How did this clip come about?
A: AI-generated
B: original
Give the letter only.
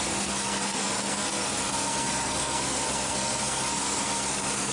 A